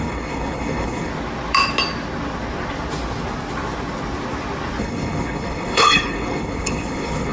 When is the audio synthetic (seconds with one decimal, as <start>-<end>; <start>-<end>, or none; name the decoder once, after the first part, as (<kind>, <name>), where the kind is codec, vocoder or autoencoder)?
0.0-1.1 (codec, HILCodec); 4.8-7.3